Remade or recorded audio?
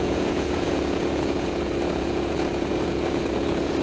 remade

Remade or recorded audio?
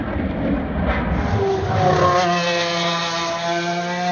recorded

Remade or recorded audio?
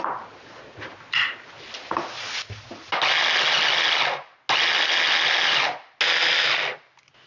recorded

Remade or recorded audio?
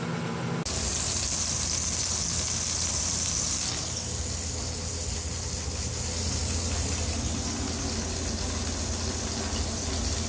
recorded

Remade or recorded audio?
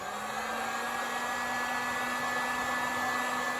recorded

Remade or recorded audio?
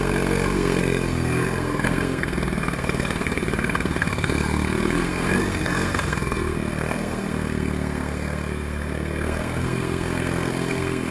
remade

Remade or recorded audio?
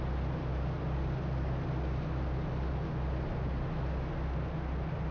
recorded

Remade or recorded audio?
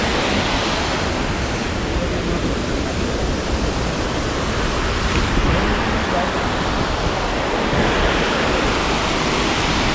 recorded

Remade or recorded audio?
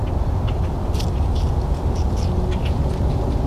recorded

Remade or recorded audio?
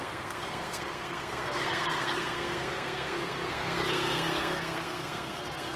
remade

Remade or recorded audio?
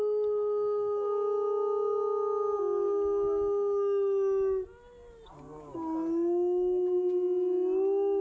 recorded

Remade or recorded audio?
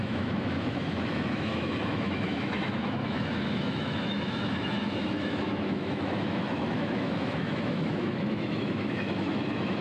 remade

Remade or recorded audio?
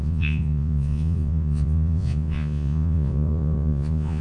remade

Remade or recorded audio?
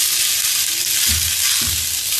recorded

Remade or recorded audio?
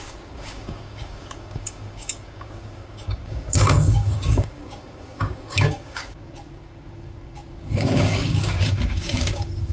remade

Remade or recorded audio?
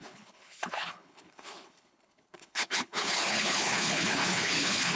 remade